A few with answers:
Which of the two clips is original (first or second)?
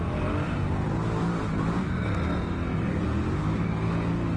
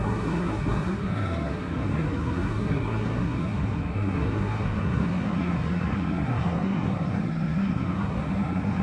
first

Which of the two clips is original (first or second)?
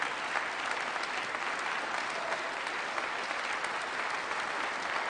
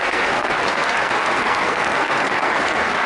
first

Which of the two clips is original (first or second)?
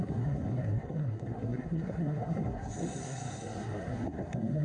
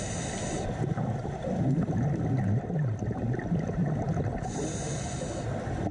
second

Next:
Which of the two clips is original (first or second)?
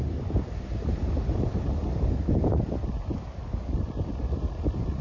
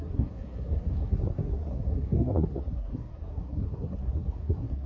first